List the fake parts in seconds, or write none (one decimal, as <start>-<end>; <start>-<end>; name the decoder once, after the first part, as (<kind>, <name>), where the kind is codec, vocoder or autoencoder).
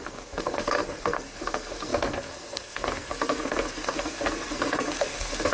0.0-5.5 (codec, SNAC)